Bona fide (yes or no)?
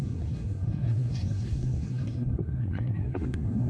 no